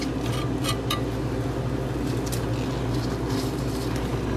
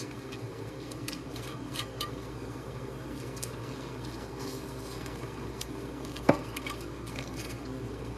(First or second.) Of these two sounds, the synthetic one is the second